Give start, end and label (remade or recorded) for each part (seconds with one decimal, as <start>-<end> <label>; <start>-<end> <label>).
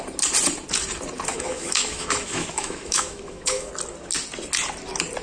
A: 0.0-1.3 recorded; 1.3-3.7 remade; 3.7-5.2 recorded